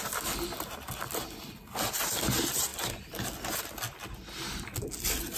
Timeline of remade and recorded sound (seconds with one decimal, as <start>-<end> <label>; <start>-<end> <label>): 0.0-5.4 recorded